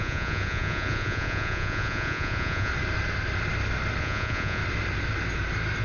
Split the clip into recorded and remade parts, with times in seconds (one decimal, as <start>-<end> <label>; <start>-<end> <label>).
0.0-2.7 remade; 2.7-4.0 recorded; 4.0-4.6 remade; 4.6-5.8 recorded